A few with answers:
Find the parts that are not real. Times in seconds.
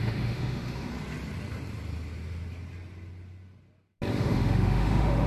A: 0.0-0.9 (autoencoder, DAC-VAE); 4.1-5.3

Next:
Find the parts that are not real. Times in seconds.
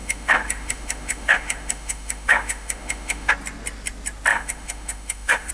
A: 0.0-3.3 (autoencoder, DAC-VAE); 4.3-5.5